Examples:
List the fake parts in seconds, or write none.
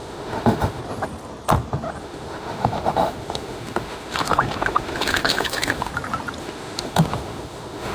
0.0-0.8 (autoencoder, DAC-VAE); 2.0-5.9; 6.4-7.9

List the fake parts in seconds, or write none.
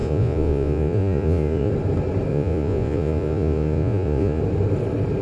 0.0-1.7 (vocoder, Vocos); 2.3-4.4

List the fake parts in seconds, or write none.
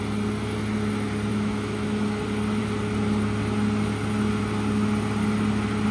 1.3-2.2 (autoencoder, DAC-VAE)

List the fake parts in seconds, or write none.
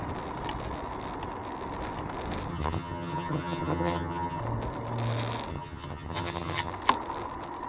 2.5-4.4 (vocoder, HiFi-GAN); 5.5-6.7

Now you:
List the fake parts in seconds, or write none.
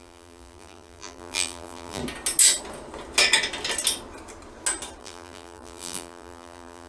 0.0-2.0 (vocoder, BigVGAN v2); 5.0-6.9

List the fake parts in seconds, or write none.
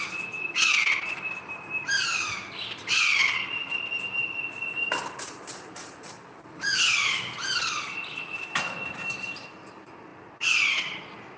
none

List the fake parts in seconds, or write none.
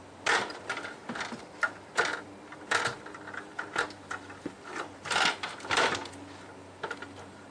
0.0-1.0 (vocoder, BigVGAN v2); 2.6-3.5; 4.5-7.5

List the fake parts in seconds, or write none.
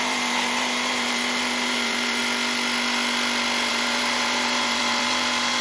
0.0-2.2 (vocoder, BigVGAN v2); 3.7-5.6